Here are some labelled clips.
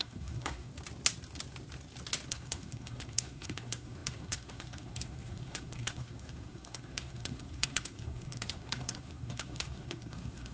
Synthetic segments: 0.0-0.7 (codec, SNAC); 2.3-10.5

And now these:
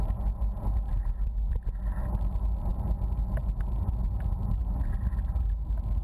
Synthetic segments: none

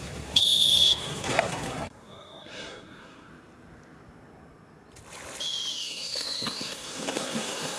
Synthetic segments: 0.0-3.3 (codec, SNAC); 5.7-7.8

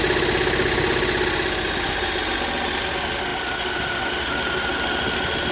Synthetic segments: none

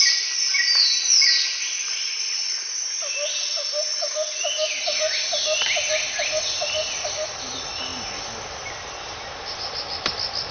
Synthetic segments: none

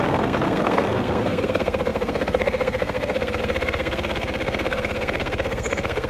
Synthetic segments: 0.0-6.1 (codec, SNAC)